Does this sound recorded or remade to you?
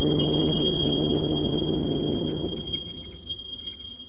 remade